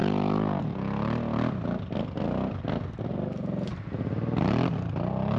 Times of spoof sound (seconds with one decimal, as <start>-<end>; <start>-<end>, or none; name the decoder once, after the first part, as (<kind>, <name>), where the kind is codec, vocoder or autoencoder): 0.0-0.6 (vocoder, BigVGAN v2)